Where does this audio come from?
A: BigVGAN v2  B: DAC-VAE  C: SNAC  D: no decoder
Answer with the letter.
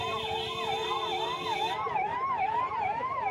A